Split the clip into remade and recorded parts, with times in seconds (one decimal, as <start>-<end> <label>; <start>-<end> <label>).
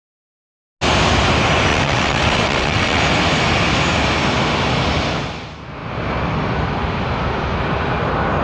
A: 0.0-1.7 recorded; 1.7-3.0 remade; 3.0-8.4 recorded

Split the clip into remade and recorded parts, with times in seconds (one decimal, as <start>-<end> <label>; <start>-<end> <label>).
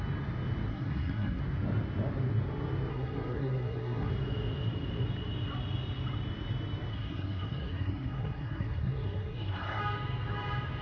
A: 0.0-0.7 recorded; 0.7-1.4 remade; 1.4-2.9 recorded; 2.9-4.1 remade; 4.1-6.9 recorded; 6.9-9.8 remade; 9.8-10.8 recorded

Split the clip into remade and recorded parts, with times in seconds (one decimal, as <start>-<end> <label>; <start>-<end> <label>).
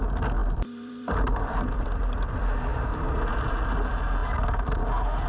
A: 0.0-0.4 recorded; 0.4-2.0 remade; 2.0-2.7 recorded; 2.7-3.3 remade; 3.3-4.2 recorded; 4.2-4.8 remade; 4.8-5.3 recorded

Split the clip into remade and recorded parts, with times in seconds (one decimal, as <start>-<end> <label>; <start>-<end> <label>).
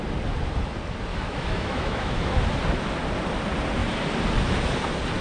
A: 0.0-1.1 recorded; 1.1-2.3 remade; 2.3-5.2 recorded